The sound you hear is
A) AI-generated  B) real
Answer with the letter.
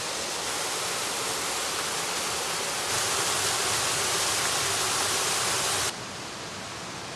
B